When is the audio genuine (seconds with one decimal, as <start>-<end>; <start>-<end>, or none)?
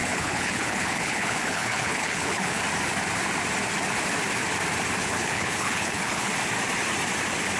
2.6-5.0; 6.3-7.6